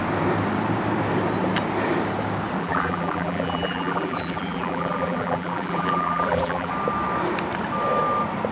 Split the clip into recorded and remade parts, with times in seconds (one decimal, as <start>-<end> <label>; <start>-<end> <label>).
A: 0.0-2.6 recorded; 2.6-6.7 remade; 6.7-8.5 recorded